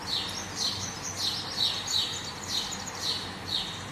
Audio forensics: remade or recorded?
recorded